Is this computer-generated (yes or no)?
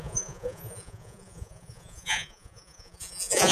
yes